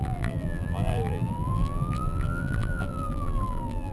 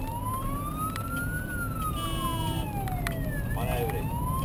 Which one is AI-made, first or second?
first